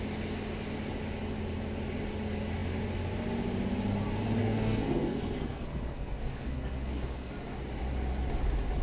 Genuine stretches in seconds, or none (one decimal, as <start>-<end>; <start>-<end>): 0.0-4.4; 7.3-8.8

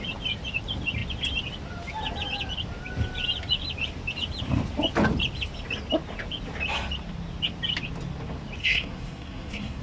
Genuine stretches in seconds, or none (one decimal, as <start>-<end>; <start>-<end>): 0.0-8.6

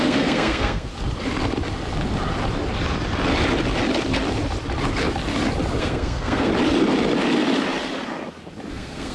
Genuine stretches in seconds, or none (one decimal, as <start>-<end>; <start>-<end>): 0.9-5.8; 6.5-8.7

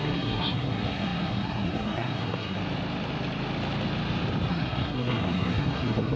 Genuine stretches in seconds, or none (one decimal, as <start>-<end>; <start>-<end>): 2.6-4.5

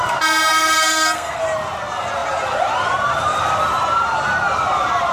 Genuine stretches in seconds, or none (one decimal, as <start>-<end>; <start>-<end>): 0.0-0.5; 1.4-5.1

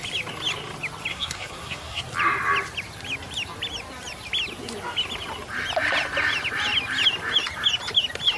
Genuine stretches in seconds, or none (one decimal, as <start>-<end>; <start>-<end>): 0.0-1.1; 2.0-8.4

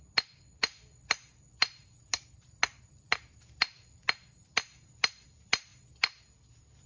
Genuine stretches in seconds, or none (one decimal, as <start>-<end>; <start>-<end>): 0.0-6.9

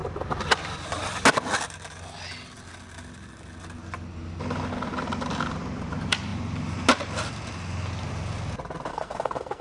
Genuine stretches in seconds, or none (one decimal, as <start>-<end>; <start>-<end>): 0.0-8.9